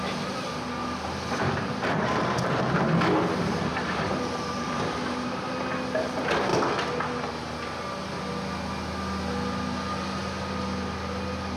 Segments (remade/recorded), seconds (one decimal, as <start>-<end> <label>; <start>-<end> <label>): 0.0-0.8 recorded; 0.8-2.7 remade; 2.7-3.7 recorded; 3.7-5.5 remade; 5.5-11.6 recorded